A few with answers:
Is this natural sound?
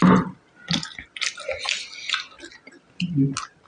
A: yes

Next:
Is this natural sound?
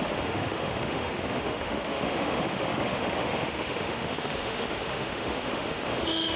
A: no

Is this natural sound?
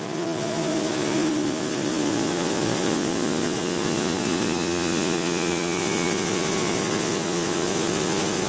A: no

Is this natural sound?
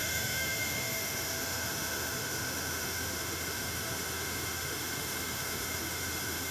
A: no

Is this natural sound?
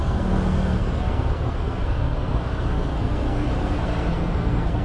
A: no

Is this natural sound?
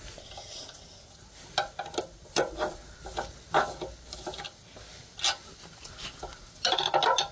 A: yes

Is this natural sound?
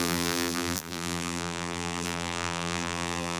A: no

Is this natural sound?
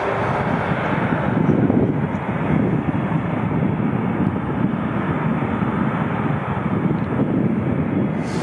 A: yes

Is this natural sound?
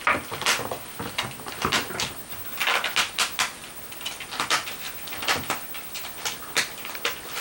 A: yes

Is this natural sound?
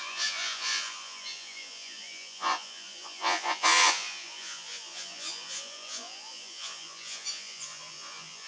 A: no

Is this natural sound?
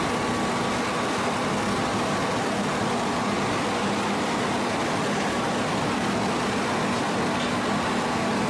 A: yes